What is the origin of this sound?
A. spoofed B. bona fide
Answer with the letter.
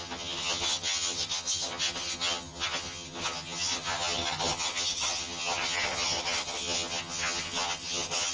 A